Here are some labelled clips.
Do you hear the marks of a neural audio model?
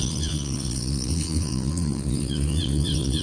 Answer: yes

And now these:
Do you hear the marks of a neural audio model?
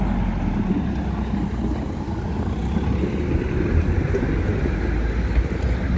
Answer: no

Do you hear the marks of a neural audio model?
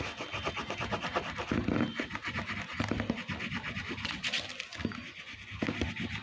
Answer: no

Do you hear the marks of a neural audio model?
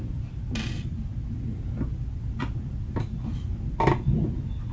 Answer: no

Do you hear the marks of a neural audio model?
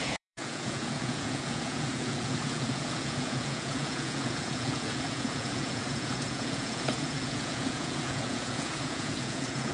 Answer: yes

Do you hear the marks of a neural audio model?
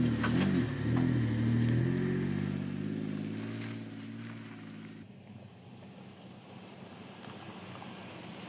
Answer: no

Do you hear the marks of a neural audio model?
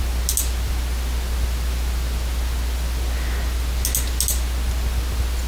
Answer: no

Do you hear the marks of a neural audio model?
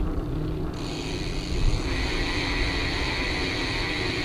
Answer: no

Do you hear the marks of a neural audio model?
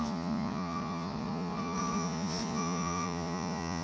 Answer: yes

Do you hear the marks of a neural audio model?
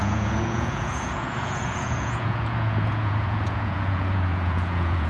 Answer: yes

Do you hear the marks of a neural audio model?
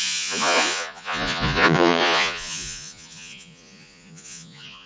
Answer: yes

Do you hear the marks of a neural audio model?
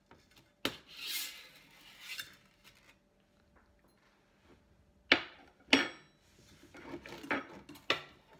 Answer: no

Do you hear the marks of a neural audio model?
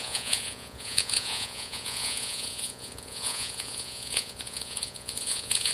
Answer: yes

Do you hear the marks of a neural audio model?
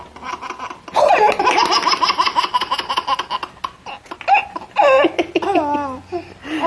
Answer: no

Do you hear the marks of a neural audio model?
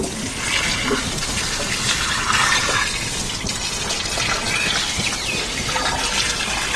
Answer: no